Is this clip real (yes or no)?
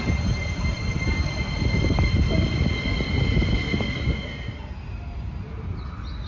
yes